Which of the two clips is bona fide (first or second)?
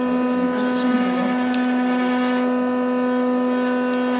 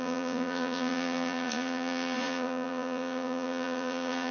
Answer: first